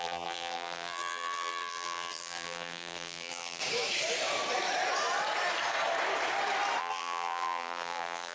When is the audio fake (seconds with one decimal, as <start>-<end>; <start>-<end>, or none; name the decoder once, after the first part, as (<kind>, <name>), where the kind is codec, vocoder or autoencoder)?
0.0-3.6 (vocoder, BigVGAN v2); 6.8-8.3